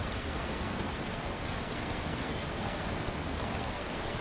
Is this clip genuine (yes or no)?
no